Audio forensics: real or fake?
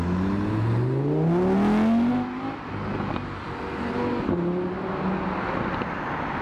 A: real